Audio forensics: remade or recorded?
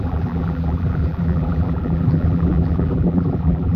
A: remade